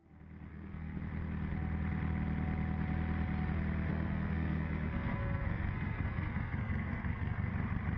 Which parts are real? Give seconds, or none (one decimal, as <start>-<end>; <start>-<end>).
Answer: 0.0-0.5; 1.0-3.9; 7.5-8.0